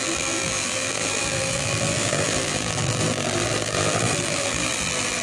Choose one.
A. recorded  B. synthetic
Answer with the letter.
B